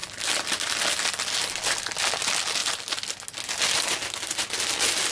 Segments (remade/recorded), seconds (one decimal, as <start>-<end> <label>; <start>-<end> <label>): 0.0-5.1 recorded